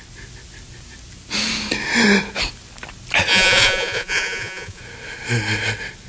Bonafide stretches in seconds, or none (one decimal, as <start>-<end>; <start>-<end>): 0.0-3.3; 4.8-6.1